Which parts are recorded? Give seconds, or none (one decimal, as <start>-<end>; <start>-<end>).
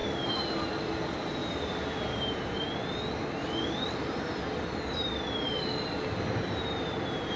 0.7-1.4; 2.5-7.4